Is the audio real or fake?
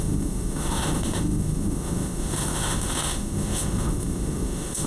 fake